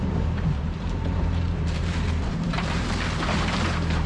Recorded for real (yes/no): no